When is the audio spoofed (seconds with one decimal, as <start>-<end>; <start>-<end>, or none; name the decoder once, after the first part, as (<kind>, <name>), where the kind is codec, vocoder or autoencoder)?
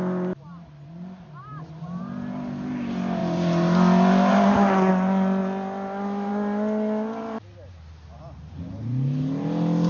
none